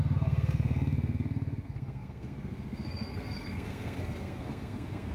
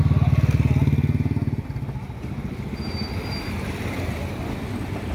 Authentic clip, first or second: second